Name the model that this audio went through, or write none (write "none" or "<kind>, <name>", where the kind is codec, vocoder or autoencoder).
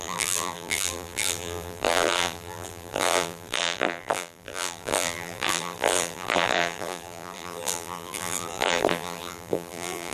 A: vocoder, BigVGAN v2